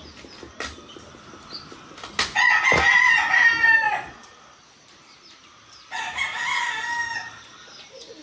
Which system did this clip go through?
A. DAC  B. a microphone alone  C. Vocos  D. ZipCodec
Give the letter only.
B